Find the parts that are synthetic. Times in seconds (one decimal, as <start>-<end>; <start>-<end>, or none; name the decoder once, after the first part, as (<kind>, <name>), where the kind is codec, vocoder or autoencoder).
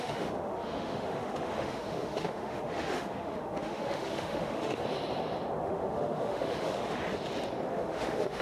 0.0-4.8 (autoencoder, DAC-VAE); 5.6-7.0; 7.7-8.4